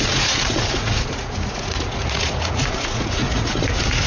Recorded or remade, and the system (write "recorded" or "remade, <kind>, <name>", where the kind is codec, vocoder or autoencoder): remade, vocoder, Vocos